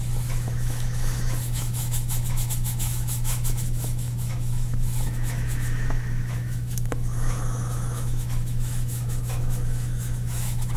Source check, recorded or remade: remade